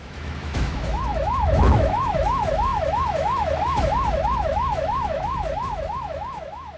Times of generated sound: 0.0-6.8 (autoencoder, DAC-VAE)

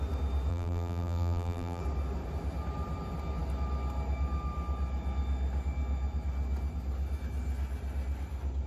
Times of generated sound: 0.5-1.8 (vocoder, BigVGAN v2)

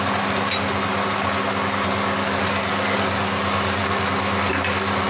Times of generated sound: none

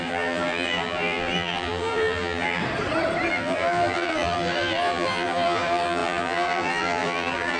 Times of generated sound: 0.0-2.6 (vocoder, BigVGAN v2); 3.3-7.6

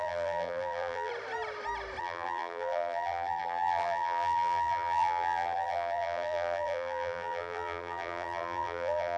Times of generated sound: 0.0-1.1 (vocoder, BigVGAN v2); 2.0-9.2

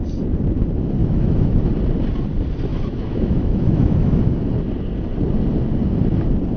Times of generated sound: 1.0-1.7 (autoencoder, DAC-VAE); 2.7-4.5